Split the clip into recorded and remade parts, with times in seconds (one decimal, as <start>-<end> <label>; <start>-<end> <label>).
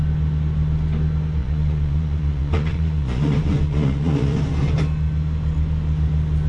0.0-1.4 recorded; 1.4-4.4 remade; 4.4-6.5 recorded